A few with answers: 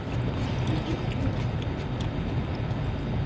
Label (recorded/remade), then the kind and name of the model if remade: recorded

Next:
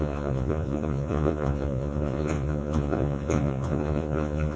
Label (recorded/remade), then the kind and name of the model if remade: remade, vocoder, Vocos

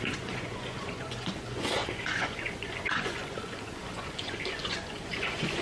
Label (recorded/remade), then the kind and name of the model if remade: remade, vocoder, Vocos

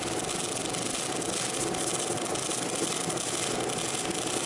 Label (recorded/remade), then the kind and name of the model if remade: recorded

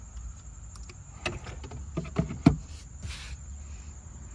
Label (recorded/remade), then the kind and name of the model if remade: recorded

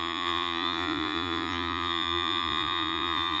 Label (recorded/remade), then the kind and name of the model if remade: remade, vocoder, Vocos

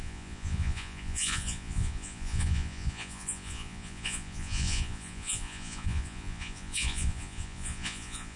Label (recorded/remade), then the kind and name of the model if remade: remade, vocoder, Vocos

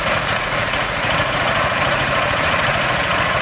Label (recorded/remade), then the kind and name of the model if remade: remade, vocoder, Vocos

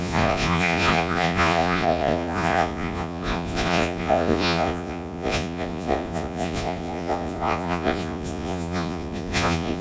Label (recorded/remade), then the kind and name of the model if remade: remade, vocoder, Vocos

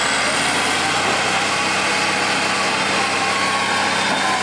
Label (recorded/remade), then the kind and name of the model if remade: recorded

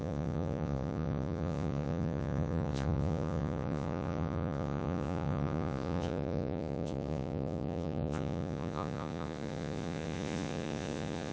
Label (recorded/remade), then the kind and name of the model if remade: remade, vocoder, Vocos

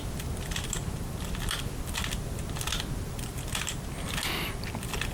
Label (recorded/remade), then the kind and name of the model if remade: recorded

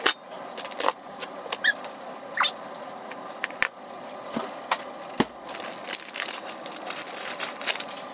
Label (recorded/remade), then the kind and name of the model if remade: recorded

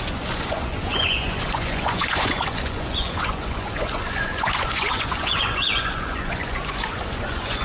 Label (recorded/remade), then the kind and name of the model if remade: remade, vocoder, Vocos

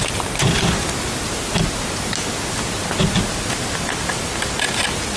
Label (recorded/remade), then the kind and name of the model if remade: recorded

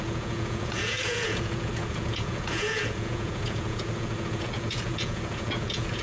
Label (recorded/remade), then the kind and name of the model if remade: remade, vocoder, Vocos